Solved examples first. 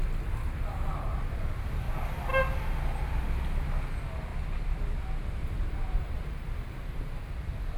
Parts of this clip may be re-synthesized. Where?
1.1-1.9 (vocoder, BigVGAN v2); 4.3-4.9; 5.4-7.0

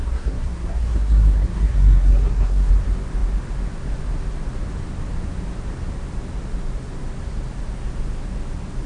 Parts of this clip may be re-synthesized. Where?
0.0-2.7 (codec, SNAC)

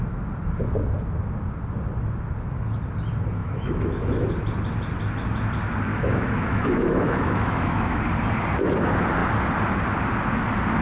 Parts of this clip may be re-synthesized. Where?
3.4-4.3 (autoencoder, DAC-VAE); 5.9-8.0

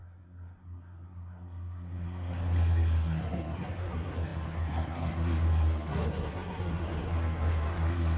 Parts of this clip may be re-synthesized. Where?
0.0-8.2 (codec, SNAC)

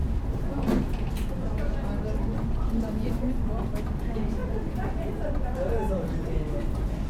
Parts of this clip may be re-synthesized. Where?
none